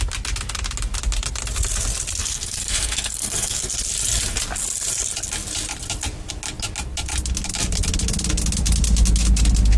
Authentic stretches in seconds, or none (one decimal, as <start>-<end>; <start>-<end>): 0.0-2.2; 3.6-9.8